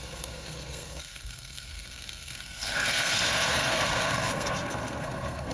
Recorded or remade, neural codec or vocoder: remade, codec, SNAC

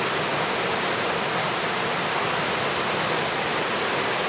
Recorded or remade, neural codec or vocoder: recorded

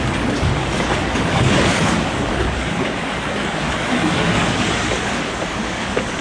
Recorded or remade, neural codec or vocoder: remade, codec, DAC